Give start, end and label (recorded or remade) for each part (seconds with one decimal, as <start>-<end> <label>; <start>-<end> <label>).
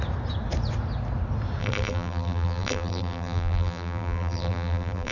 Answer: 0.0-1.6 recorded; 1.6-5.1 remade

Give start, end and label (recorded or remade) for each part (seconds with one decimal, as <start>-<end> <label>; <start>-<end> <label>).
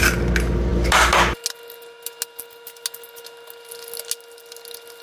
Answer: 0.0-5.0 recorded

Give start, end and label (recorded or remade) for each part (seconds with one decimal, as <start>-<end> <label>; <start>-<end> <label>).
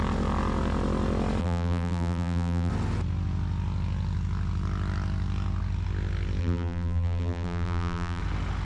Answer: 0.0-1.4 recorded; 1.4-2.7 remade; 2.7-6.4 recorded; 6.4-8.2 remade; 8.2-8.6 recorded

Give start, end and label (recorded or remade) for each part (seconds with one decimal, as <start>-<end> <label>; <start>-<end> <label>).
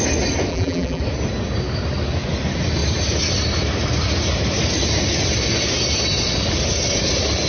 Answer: 0.0-0.5 recorded; 0.5-1.0 remade; 1.0-7.5 recorded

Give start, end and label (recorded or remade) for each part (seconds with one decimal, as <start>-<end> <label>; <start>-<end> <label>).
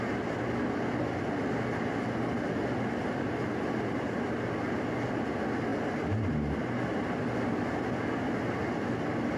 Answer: 0.0-9.4 recorded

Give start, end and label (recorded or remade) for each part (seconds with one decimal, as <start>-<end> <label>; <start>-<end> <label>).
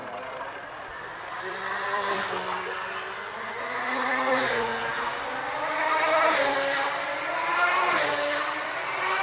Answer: 0.0-2.3 remade; 2.3-9.2 recorded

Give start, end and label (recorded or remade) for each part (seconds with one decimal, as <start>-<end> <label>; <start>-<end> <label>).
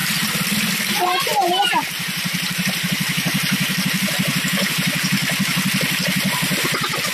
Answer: 0.0-0.9 recorded; 0.9-5.2 remade; 5.2-7.1 recorded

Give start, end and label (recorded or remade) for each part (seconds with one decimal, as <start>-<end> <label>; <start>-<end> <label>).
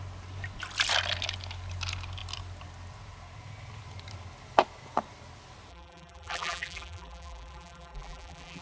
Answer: 0.0-5.7 recorded; 5.7-8.6 remade